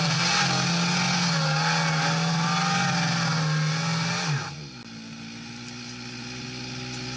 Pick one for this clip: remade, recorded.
recorded